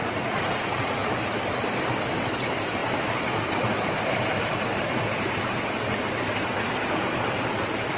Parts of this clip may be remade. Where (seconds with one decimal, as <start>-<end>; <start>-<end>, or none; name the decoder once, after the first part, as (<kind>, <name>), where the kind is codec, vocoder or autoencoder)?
0.0-1.1 (vocoder, Vocos)